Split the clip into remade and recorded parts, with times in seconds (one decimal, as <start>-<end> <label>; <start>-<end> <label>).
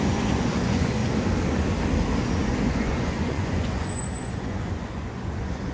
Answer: 0.0-1.0 remade; 1.0-2.2 recorded; 2.2-5.7 remade